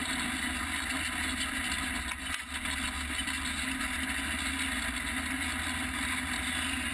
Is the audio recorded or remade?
recorded